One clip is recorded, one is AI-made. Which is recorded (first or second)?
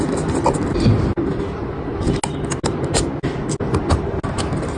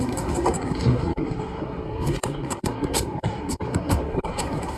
first